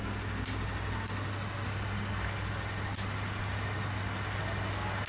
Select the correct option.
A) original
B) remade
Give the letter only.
A